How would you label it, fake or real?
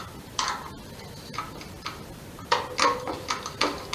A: real